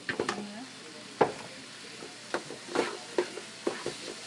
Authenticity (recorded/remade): recorded